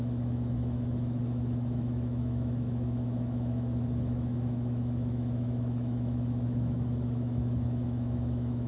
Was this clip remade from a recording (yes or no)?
yes